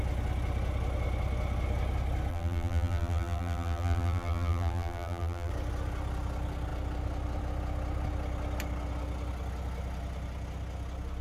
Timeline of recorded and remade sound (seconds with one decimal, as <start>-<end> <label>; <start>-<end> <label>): 0.0-2.3 recorded; 2.3-5.5 remade; 5.5-11.2 recorded